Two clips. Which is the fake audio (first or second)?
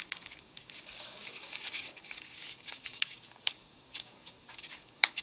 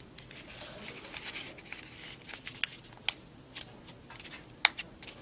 first